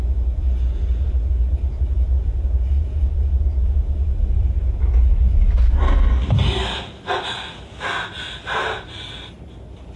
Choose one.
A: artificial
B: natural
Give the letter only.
B